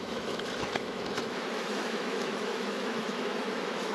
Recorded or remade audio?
remade